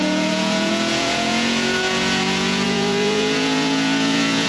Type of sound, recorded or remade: remade